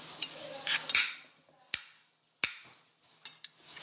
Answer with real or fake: real